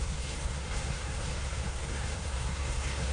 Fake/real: fake